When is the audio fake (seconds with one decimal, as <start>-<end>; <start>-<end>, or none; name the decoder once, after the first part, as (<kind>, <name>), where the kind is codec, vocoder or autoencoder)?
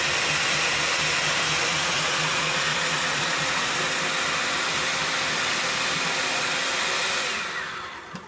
1.7-3.7 (vocoder, Vocos)